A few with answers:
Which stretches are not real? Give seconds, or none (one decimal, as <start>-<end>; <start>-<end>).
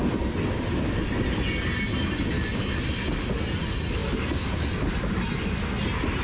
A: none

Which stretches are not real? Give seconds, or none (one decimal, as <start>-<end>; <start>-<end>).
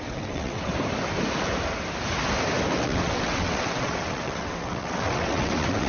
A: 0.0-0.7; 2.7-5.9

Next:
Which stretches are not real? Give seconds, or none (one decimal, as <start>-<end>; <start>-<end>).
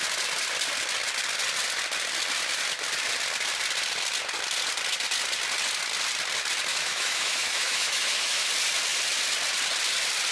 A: 6.7-8.5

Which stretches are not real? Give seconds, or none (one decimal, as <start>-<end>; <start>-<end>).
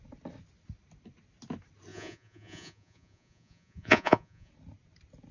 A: 1.9-4.5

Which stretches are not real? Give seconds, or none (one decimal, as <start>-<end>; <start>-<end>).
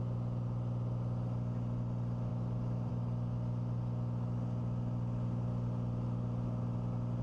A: none